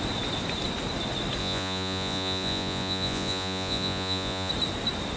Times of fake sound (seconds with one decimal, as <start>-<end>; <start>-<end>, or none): 1.4-4.5